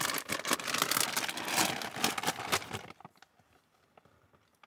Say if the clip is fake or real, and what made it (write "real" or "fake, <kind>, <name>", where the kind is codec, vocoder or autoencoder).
real